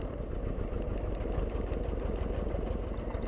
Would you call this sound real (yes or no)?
yes